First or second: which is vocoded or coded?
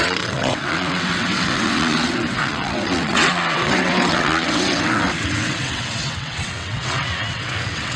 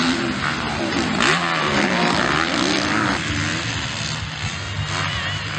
first